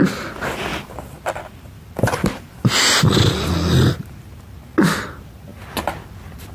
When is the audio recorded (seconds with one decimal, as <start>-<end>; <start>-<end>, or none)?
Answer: 0.0-6.5